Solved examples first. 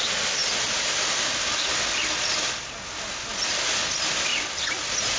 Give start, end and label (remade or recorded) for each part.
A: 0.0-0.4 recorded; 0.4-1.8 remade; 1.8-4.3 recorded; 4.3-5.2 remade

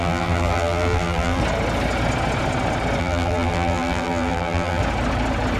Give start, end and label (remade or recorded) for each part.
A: 0.0-1.4 remade; 1.4-3.0 recorded; 3.0-4.8 remade; 4.8-5.6 recorded

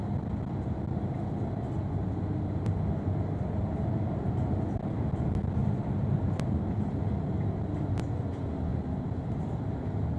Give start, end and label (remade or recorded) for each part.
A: 0.0-5.6 recorded; 5.6-6.3 remade; 6.3-8.7 recorded; 8.7-9.3 remade; 9.3-10.2 recorded